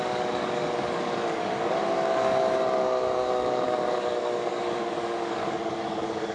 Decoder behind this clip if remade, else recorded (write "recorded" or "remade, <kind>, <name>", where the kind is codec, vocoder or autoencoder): remade, codec, DAC